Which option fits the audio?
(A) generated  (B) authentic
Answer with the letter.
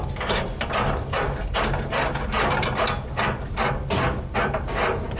B